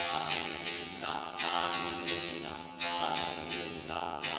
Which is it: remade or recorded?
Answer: remade